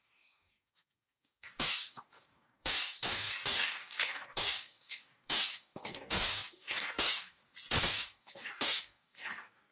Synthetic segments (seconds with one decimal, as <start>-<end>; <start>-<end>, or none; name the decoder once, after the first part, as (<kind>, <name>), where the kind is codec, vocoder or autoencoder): 0.0-7.4 (codec, DAC); 7.9-9.7